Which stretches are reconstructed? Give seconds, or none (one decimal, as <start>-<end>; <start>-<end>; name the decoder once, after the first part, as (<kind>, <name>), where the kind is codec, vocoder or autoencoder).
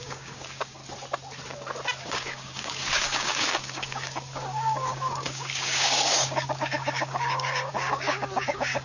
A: 0.0-0.8 (codec, DAC); 2.0-8.8